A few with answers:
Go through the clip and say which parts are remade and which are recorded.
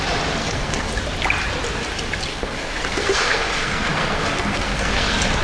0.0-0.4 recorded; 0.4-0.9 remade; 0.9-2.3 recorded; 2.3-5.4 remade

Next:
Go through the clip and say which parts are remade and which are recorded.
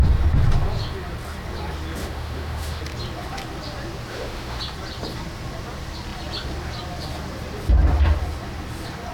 0.0-2.0 recorded; 2.0-2.8 remade; 2.8-4.1 recorded; 4.1-4.6 remade; 4.6-9.1 recorded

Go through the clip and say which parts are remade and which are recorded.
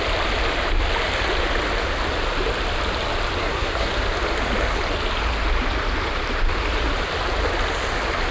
0.0-3.4 recorded; 3.4-3.9 remade; 3.9-8.3 recorded